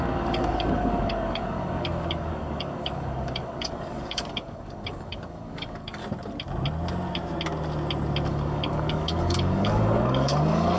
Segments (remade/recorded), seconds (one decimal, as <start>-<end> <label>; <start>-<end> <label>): 0.0-6.0 remade; 6.0-8.3 recorded; 8.3-10.8 remade